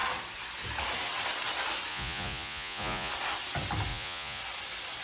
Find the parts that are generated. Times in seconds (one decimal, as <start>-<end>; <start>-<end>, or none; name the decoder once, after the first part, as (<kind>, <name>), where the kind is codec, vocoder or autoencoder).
1.9-3.1 (vocoder, Vocos); 3.9-4.4